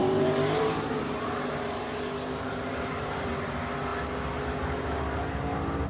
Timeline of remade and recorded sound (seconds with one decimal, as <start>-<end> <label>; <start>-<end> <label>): 0.0-3.5 remade; 3.5-5.9 recorded